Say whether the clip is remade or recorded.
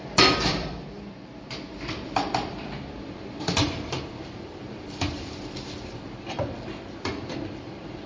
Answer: remade